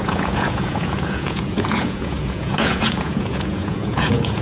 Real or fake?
fake